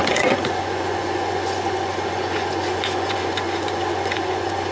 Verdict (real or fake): fake